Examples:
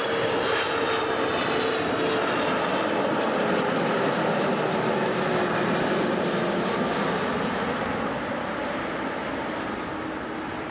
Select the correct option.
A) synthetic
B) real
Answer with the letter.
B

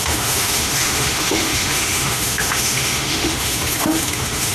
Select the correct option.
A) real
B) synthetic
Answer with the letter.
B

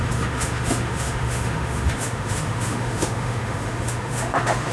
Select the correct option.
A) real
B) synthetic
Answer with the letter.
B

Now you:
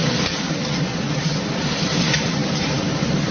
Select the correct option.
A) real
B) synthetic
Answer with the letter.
B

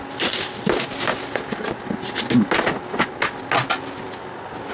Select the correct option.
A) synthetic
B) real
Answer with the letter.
B